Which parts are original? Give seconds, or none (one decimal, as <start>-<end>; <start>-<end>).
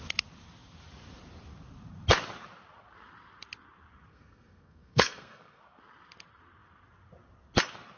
0.0-4.1; 5.6-8.0